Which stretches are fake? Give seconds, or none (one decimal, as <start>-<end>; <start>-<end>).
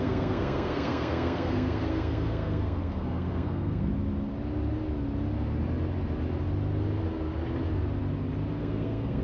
0.0-3.9; 8.6-9.2